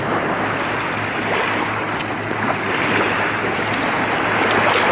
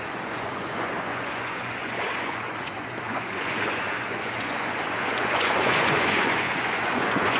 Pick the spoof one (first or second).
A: second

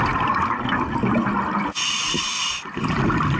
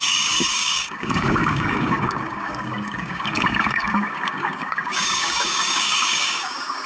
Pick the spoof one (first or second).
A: second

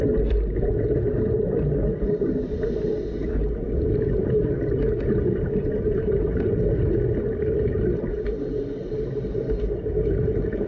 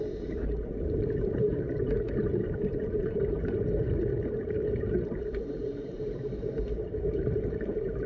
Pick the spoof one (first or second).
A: second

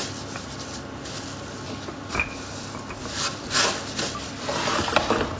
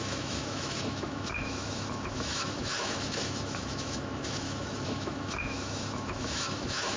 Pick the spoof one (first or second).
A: second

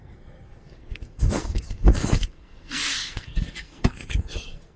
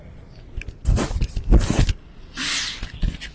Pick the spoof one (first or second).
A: first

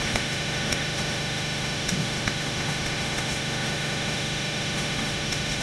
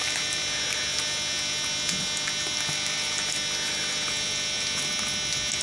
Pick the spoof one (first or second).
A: first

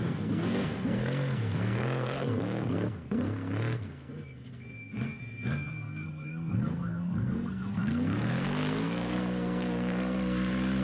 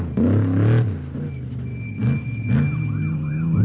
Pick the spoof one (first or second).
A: first